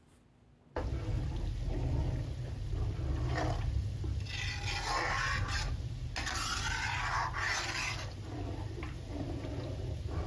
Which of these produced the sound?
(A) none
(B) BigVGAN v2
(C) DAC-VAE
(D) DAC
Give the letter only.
A